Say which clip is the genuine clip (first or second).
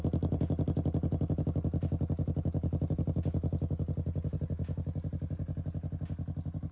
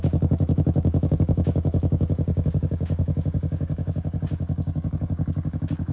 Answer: first